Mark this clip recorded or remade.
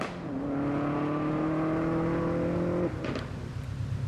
recorded